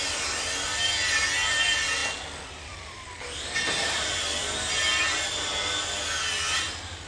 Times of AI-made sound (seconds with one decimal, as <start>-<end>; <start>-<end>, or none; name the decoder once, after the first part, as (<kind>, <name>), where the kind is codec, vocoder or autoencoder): 2.0-5.5 (vocoder, BigVGAN v2)